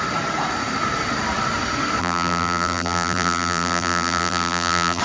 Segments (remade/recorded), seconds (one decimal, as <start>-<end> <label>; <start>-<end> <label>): 0.0-2.0 recorded; 2.0-5.0 remade